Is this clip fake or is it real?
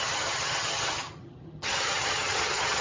fake